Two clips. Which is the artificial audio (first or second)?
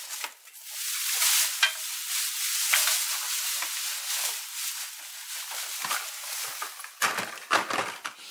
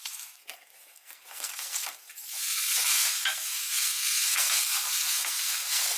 second